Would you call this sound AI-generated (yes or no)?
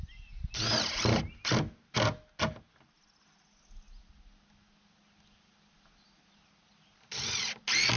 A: no